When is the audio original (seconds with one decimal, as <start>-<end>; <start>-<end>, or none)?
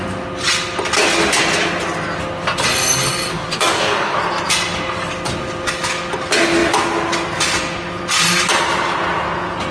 0.0-3.3; 4.2-9.7